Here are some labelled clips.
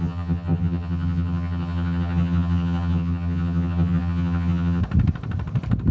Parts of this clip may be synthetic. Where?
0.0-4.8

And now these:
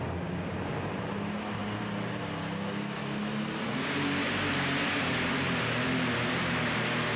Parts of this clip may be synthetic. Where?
none

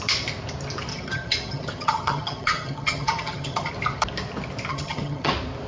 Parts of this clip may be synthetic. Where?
0.9-3.7; 4.7-5.3

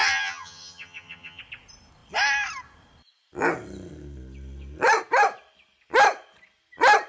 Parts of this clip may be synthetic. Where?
0.0-1.4

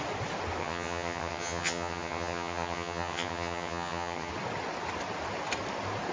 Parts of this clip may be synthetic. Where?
0.6-4.3